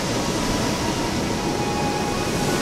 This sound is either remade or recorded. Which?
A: recorded